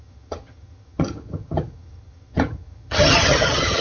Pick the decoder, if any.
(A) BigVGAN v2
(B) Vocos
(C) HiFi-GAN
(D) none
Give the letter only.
C